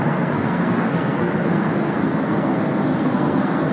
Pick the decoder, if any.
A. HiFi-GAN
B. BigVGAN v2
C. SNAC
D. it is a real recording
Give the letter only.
C